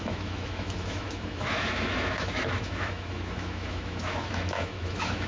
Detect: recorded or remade remade